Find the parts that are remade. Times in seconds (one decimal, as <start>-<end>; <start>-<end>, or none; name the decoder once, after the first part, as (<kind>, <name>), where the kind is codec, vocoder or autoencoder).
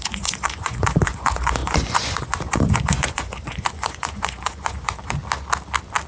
0.0-5.2 (vocoder, Vocos)